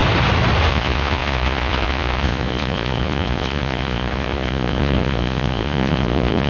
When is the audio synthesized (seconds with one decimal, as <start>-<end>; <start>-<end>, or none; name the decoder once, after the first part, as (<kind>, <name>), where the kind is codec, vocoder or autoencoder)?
0.7-6.5 (vocoder, Vocos)